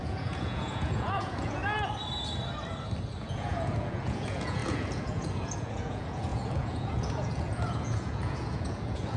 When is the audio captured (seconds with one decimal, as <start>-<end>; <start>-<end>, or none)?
1.6-3.2